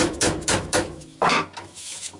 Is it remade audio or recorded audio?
remade